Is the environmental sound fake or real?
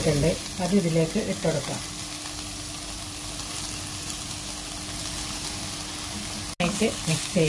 real